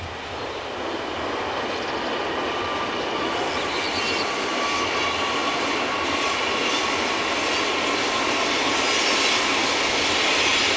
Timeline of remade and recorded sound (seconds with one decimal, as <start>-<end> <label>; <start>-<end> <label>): 0.0-10.8 recorded